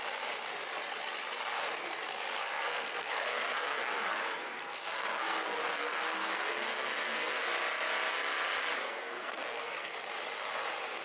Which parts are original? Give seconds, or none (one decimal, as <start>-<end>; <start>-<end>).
0.0-2.4; 7.5-8.8; 9.9-11.0

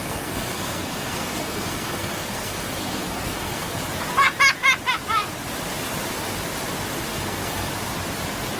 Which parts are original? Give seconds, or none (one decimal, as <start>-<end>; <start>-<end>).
3.8-7.1; 7.7-8.6

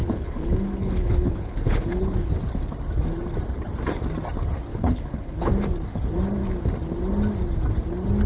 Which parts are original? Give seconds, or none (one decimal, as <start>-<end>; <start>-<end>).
2.3-4.7; 5.5-8.3

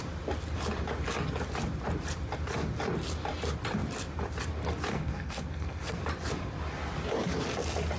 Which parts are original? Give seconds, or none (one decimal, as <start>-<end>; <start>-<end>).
0.0-4.9; 6.0-8.0

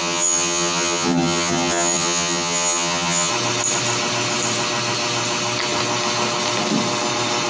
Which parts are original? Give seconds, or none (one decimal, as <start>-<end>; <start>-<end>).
3.3-7.5

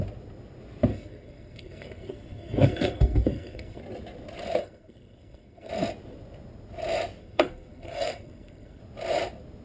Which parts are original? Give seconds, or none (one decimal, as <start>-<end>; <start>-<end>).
0.0-0.9; 3.8-4.6; 5.7-7.2; 8.8-9.6

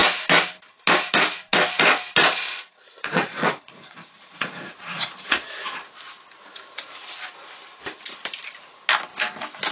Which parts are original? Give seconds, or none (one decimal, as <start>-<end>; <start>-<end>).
0.0-2.2; 5.5-9.7